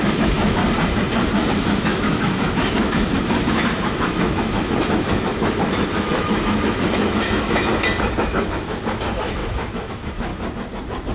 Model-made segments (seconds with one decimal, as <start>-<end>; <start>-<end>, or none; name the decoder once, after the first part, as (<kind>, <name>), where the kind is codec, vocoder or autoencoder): 0.0-0.6 (autoencoder, DAC-VAE); 1.5-7.7; 8.2-10.3